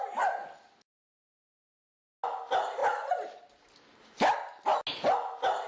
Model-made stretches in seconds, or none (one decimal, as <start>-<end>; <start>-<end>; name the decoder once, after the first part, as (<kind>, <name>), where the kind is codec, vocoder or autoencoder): none